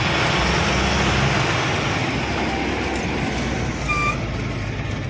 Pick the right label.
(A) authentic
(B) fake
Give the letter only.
A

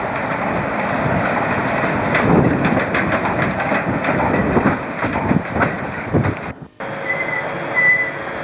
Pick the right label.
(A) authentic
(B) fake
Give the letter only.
A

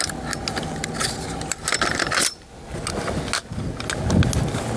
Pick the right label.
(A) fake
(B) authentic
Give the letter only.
B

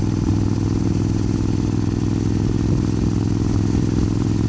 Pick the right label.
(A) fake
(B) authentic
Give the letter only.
B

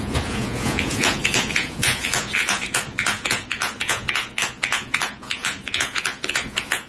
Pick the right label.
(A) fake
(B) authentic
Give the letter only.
A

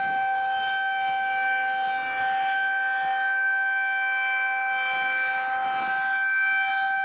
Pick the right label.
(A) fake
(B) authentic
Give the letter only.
B